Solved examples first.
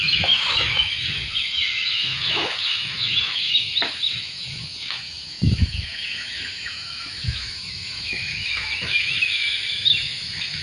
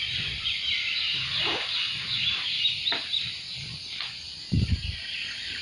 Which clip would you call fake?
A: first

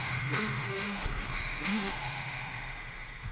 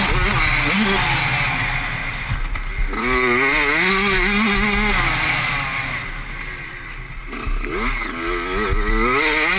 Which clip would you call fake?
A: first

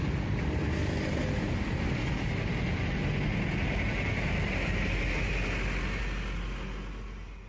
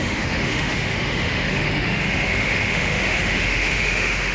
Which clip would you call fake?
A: second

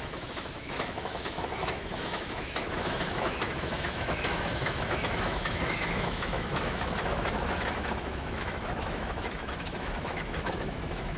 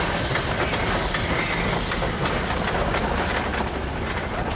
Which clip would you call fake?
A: first